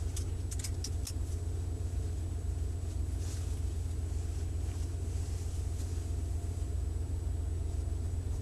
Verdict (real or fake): real